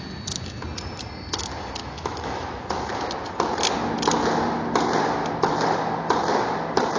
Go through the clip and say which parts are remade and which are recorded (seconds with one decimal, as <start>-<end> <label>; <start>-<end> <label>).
0.0-1.8 recorded; 1.8-2.6 remade; 2.6-7.0 recorded